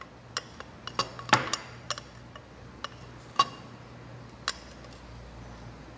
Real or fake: real